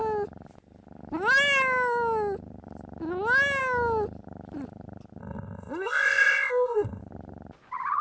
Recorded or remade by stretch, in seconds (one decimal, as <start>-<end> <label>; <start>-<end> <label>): 0.0-5.2 recorded; 5.2-7.0 remade; 7.0-8.0 recorded